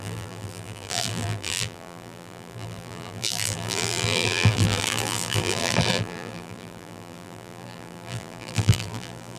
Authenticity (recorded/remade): remade